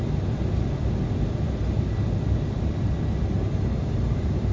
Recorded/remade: recorded